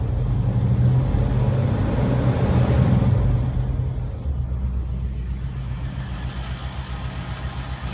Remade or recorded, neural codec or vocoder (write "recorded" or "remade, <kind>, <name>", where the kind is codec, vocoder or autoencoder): recorded